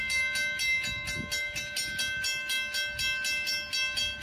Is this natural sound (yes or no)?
yes